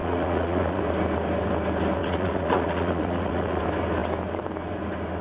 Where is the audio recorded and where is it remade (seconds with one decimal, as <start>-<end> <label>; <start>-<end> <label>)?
0.0-0.8 remade; 0.8-2.0 recorded; 2.0-3.6 remade; 3.6-5.2 recorded